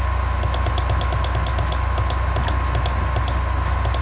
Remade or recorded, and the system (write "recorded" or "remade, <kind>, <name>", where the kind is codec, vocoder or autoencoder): recorded